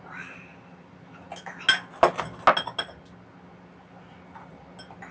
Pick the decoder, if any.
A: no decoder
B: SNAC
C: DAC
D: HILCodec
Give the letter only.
A